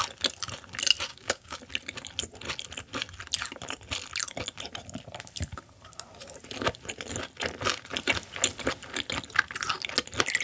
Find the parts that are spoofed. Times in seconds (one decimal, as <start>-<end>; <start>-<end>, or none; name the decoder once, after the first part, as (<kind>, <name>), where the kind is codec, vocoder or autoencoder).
1.1-1.6 (codec, DAC)